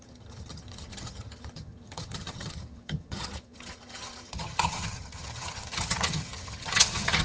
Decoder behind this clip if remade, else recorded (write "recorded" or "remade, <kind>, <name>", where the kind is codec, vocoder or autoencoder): remade, vocoder, HiFi-GAN